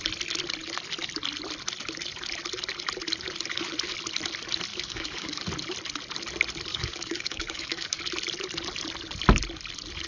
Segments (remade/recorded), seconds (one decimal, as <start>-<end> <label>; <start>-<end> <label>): 0.0-4.7 recorded; 4.7-5.4 remade; 5.4-6.7 recorded; 6.7-8.0 remade; 8.0-10.1 recorded